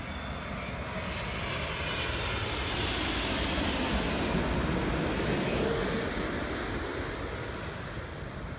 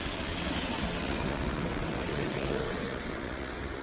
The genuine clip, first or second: first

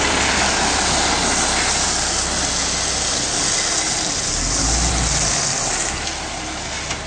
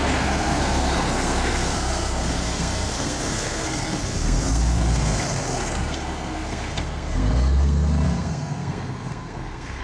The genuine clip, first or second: first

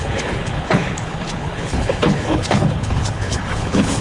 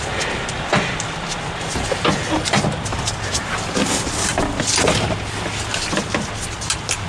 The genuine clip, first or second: second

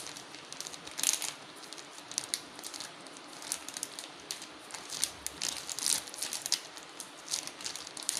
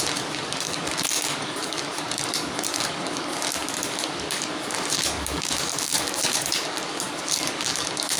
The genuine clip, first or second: first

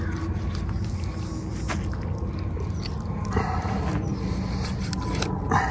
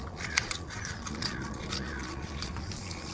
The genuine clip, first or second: first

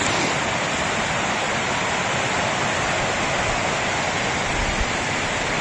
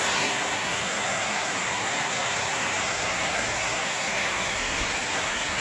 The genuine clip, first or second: first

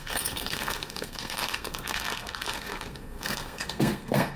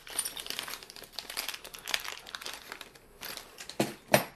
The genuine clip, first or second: second